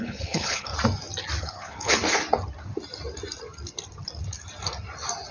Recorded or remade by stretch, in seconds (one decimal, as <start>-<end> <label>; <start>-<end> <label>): 0.0-0.7 remade; 0.7-1.4 recorded; 1.4-2.0 remade; 2.0-5.3 recorded